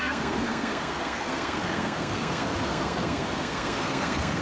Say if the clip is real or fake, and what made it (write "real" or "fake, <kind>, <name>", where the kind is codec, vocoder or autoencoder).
fake, codec, SNAC